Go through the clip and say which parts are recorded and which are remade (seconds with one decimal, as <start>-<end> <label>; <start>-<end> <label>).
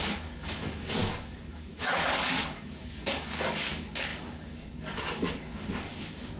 0.0-6.4 remade